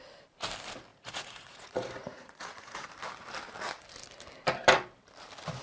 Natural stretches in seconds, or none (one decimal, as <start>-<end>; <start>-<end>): 0.0-0.9; 2.9-5.6

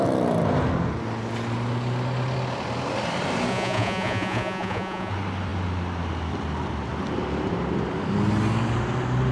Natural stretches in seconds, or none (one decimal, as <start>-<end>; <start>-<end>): 0.0-3.5; 5.1-9.3